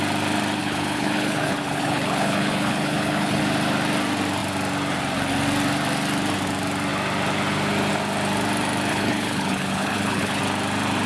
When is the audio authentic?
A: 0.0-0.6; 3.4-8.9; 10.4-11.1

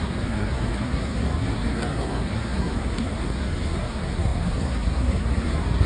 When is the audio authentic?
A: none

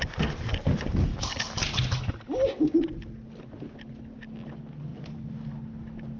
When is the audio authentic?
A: 0.0-6.2

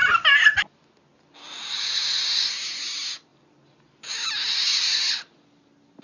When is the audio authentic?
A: 0.0-6.0

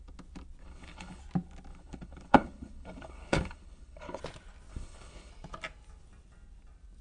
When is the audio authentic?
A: 0.0-0.6; 1.2-1.7; 4.2-4.7; 5.3-7.0

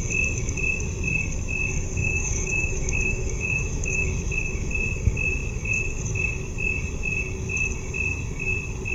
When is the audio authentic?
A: 0.0-2.0; 4.7-8.9

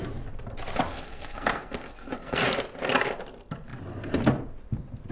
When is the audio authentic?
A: 0.0-0.9; 2.4-5.1

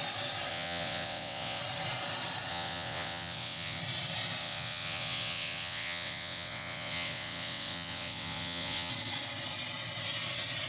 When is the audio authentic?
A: 0.0-0.5; 1.6-2.5; 3.8-4.4; 8.9-10.7